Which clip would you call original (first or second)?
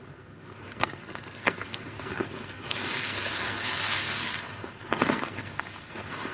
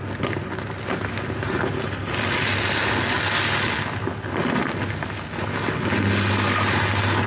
second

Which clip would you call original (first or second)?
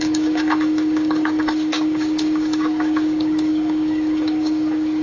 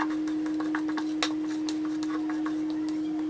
second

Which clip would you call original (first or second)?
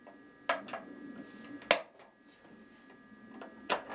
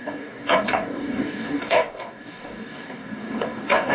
first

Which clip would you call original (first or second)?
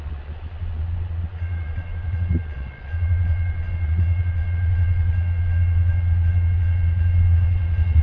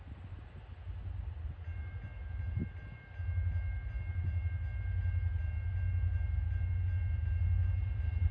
second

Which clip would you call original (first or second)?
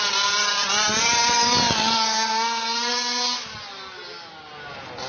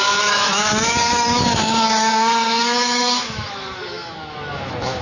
first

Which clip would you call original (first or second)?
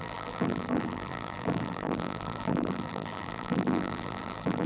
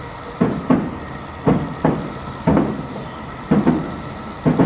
second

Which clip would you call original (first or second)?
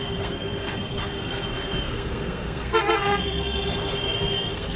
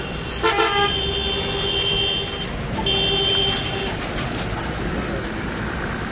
second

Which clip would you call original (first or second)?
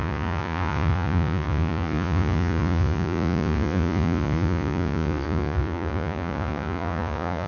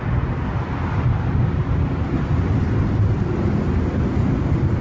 second